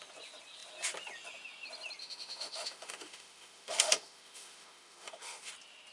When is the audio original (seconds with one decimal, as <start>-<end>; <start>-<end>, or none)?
0.0-2.0; 5.5-5.9